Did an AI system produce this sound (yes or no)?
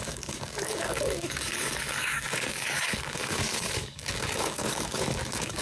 yes